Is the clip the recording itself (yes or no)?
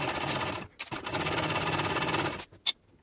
yes